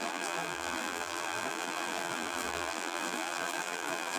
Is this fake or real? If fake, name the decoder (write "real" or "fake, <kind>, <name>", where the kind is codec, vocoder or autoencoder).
fake, vocoder, BigVGAN v2